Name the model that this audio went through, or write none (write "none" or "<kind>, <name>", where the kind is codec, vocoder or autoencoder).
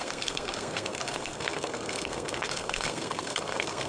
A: codec, SNAC